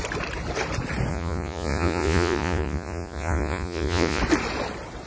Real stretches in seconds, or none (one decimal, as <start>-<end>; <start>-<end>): 0.0-1.1; 4.2-5.1